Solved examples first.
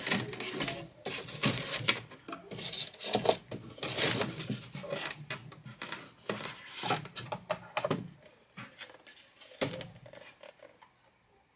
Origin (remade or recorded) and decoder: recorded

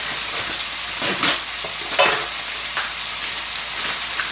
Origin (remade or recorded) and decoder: recorded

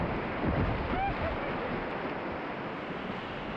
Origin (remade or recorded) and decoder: recorded